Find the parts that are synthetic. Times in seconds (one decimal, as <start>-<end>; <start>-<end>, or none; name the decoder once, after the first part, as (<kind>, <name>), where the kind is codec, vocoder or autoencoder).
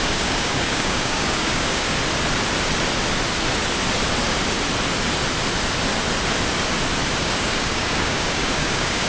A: 0.0-2.0 (codec, DAC); 7.2-9.1